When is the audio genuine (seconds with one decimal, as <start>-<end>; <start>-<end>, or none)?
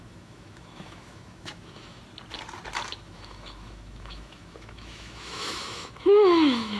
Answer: 2.0-2.9